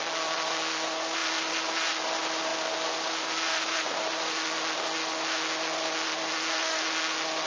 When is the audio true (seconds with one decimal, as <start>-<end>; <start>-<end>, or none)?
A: 0.0-7.5

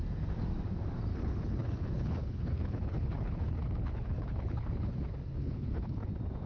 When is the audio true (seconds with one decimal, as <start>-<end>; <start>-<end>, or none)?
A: 0.0-1.1; 5.0-5.4; 6.1-6.5

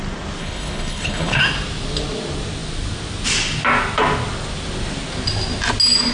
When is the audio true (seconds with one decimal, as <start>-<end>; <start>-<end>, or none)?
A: 0.0-0.4; 1.4-6.1

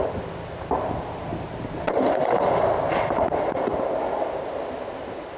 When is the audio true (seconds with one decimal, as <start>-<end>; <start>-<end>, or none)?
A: 0.0-5.4